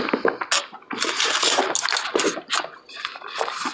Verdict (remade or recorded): recorded